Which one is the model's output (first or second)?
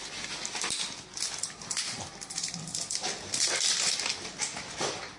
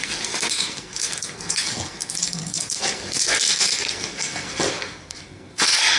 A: second